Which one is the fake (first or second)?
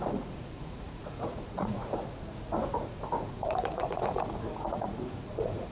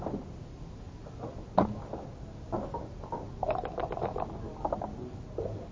first